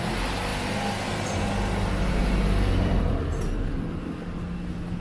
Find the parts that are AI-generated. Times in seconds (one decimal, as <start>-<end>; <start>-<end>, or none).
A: none